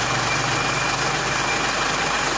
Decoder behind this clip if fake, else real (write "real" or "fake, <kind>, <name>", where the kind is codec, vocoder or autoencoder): real